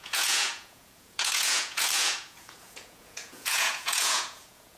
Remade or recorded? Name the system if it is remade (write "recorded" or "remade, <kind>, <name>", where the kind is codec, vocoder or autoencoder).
remade, vocoder, Vocos